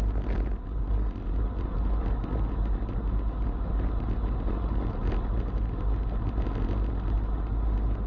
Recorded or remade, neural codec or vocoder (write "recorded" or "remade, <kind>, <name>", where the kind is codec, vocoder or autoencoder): recorded